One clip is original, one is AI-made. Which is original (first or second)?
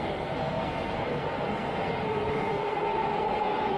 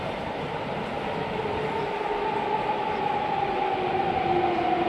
second